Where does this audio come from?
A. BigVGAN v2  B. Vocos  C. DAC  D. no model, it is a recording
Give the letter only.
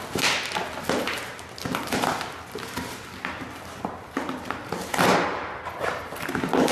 D